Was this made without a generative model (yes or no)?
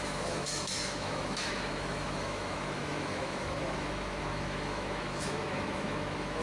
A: no